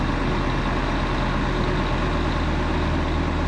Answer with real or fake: real